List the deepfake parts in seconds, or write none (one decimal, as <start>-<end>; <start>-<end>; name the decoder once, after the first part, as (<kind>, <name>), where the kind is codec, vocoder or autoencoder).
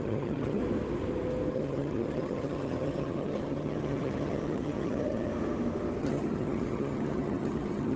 0.0-0.6 (vocoder, HiFi-GAN); 1.5-5.3; 6.0-8.0